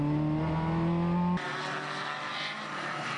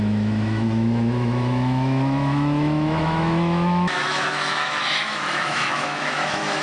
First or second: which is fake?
second